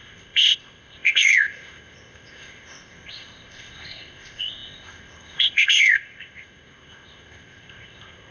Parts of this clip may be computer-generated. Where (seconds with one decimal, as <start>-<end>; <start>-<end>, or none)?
0.0-8.3